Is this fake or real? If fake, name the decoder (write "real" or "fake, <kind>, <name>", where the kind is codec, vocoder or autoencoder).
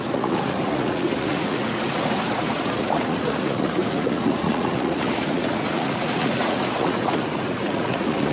fake, vocoder, Vocos